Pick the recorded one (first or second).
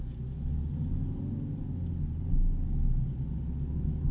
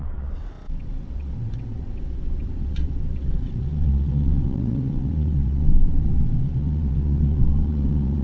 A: first